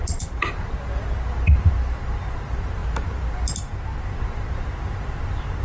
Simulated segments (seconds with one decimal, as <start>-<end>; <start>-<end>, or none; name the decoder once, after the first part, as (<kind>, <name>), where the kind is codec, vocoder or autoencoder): none